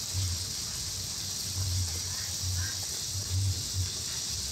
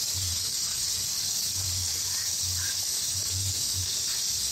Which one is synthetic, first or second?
second